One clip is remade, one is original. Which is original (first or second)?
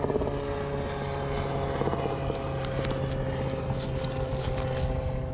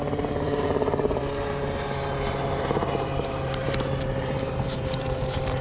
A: first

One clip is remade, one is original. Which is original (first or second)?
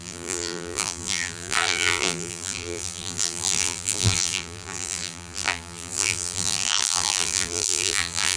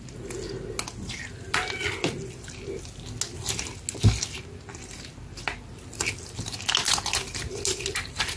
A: second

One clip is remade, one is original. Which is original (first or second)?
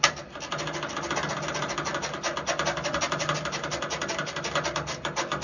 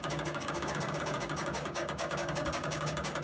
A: first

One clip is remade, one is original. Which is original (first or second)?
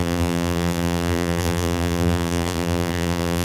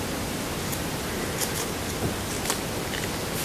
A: second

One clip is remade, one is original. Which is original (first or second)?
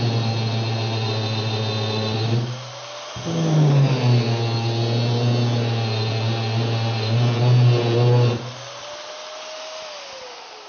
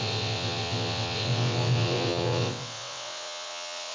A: first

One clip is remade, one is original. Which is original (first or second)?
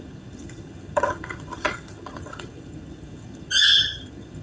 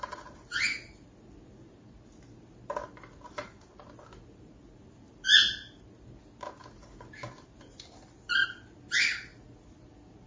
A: second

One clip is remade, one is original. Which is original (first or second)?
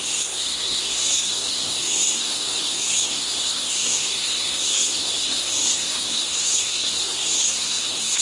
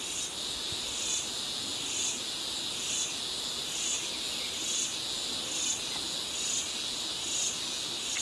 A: second